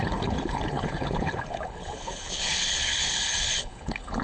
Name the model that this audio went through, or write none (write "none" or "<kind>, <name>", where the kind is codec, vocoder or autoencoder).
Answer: codec, HILCodec